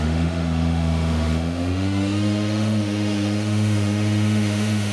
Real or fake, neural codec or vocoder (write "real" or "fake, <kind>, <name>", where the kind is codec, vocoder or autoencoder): fake, autoencoder, DAC-VAE